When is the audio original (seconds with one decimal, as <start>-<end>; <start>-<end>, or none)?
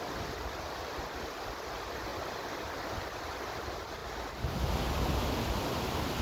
0.0-6.2